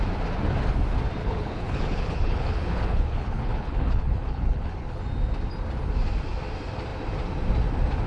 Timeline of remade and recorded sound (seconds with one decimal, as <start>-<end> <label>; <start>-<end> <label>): 0.0-1.2 recorded; 1.2-5.0 remade; 5.0-8.1 recorded